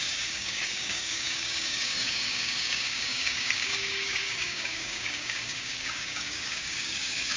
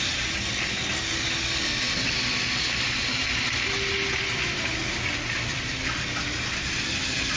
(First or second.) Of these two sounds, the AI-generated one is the first